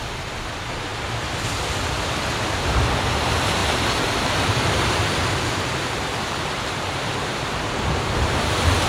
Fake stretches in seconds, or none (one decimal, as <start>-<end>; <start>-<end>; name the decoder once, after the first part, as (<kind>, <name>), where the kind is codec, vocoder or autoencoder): 3.6-7.6 (vocoder, BigVGAN v2)